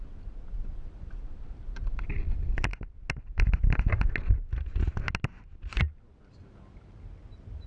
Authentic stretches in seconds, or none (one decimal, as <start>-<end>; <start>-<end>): 0.0-0.7; 2.1-7.7